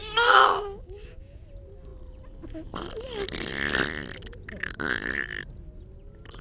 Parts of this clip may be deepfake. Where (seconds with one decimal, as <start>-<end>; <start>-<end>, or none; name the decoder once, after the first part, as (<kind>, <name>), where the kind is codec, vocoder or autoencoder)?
0.0-1.4 (codec, DAC)